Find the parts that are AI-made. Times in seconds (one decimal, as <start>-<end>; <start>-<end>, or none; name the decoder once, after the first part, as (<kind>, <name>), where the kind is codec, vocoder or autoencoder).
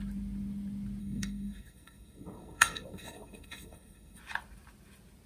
1.0-4.2 (codec, SNAC)